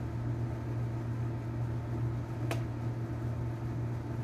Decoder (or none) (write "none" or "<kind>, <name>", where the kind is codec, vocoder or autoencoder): none